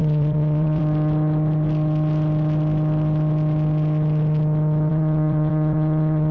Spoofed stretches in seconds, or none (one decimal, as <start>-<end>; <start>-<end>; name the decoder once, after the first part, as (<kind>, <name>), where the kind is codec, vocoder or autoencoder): 0.0-0.8 (vocoder, WaveNeXt); 4.9-6.3

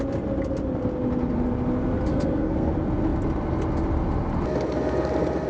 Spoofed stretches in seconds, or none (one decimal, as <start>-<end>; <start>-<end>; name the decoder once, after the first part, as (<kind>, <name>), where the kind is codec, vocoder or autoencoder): 2.1-2.7 (codec, SNAC)

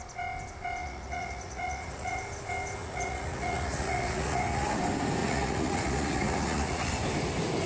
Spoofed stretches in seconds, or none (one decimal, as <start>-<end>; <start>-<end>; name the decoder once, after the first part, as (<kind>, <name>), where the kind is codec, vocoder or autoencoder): 0.8-2.2 (vocoder, Vocos); 2.8-4.8; 5.2-6.9

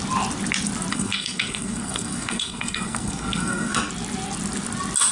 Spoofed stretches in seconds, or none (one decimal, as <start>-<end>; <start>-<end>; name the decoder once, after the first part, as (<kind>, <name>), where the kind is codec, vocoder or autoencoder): 0.9-3.9 (codec, SNAC)

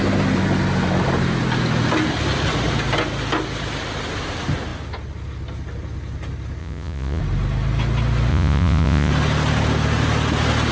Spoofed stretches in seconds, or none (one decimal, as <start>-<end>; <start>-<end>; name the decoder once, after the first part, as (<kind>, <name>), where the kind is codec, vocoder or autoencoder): 6.6-7.2 (vocoder, Vocos); 8.3-9.1

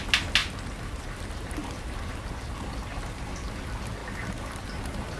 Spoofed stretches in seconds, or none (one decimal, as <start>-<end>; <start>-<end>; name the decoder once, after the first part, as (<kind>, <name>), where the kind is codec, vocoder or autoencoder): none